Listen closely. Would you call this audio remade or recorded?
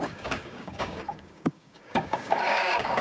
remade